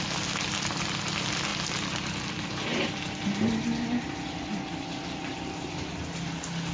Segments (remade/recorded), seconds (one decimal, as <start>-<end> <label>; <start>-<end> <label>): 0.0-2.7 recorded; 2.7-6.7 remade